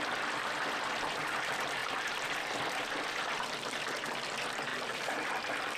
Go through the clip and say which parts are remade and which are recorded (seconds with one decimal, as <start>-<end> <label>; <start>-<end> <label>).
0.0-4.7 recorded; 4.7-5.3 remade; 5.3-5.8 recorded